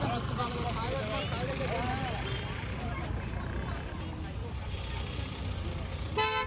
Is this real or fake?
real